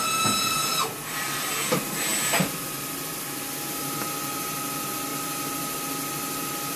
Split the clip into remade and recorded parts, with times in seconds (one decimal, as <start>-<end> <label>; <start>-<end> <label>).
0.0-6.8 recorded